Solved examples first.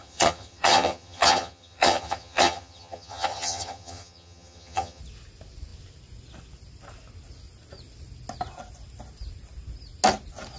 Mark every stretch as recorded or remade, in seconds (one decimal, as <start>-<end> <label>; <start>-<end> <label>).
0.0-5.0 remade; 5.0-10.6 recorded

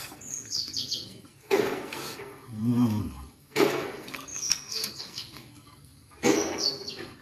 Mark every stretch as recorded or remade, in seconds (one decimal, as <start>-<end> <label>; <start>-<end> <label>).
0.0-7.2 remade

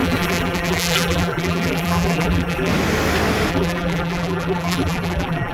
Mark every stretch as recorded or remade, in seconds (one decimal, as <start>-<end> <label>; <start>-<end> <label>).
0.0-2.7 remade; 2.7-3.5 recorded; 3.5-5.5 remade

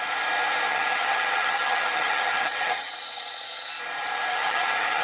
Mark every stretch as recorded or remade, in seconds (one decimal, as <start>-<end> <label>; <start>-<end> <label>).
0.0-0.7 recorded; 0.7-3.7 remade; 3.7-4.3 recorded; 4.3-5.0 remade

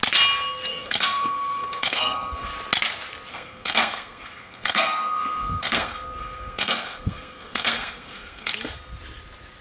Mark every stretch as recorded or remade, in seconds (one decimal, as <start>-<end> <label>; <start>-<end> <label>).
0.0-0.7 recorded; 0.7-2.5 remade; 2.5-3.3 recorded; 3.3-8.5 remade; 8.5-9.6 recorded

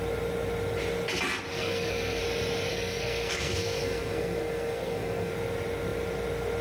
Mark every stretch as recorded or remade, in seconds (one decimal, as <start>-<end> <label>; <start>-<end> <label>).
0.0-1.5 recorded; 1.5-2.2 remade; 2.2-2.7 recorded; 2.7-5.3 remade; 5.3-6.6 recorded